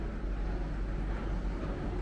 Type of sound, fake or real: real